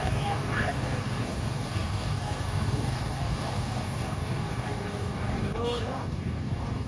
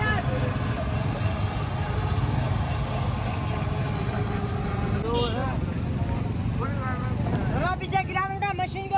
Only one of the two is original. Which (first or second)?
second